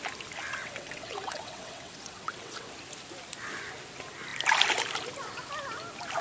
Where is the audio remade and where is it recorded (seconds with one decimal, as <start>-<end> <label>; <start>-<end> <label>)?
0.0-0.6 recorded; 0.6-2.7 remade; 2.7-6.2 recorded